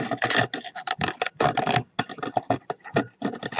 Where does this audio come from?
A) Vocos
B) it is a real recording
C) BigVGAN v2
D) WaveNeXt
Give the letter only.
B